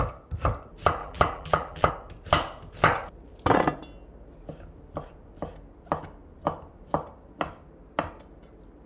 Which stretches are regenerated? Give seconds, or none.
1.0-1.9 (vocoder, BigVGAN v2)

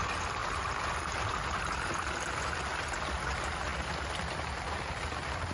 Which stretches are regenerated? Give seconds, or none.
none

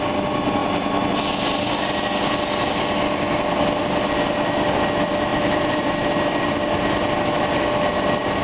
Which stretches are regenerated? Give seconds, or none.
5.3-6.1 (vocoder, BigVGAN v2)

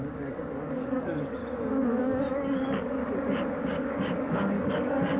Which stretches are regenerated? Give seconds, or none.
0.0-1.4 (codec, DAC); 2.0-3.0; 3.6-5.2